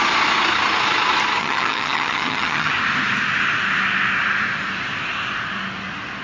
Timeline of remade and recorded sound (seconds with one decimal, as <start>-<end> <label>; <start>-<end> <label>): 0.0-1.4 recorded; 1.4-2.7 remade; 2.7-6.2 recorded